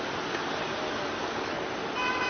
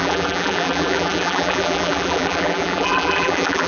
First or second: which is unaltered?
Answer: first